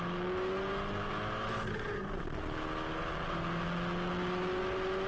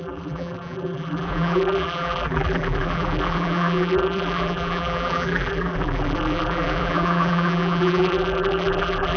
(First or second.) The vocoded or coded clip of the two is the second